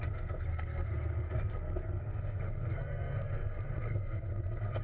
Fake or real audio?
fake